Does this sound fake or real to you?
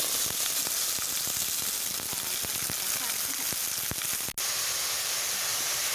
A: real